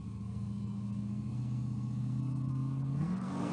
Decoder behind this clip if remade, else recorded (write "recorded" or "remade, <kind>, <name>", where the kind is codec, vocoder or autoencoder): remade, codec, SNAC